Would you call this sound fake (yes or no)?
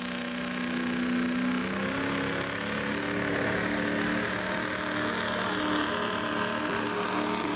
no